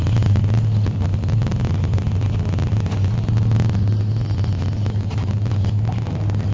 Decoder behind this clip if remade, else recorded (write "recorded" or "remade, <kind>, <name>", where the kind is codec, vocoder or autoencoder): recorded